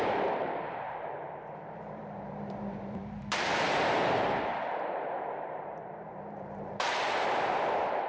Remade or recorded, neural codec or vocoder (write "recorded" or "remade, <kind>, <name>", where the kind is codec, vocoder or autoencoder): remade, vocoder, BigVGAN v2